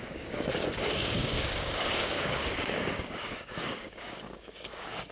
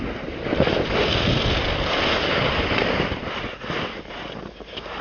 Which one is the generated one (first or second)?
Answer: first